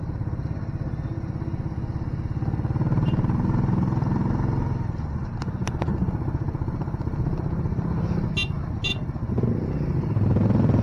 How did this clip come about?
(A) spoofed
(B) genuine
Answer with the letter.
B